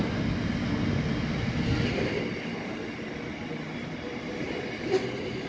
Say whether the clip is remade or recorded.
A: recorded